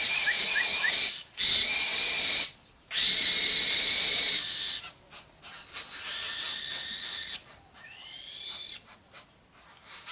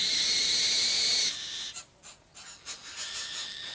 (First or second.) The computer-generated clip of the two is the first